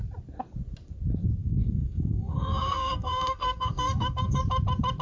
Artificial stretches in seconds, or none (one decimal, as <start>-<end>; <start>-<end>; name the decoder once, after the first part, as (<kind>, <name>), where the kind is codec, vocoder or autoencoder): 1.4-4.4 (codec, SNAC)